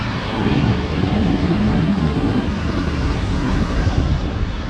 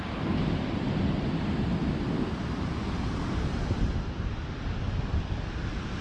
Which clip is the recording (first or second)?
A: second